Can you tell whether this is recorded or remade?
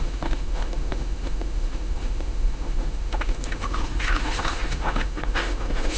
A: remade